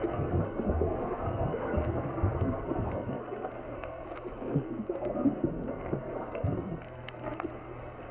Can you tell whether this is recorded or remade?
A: remade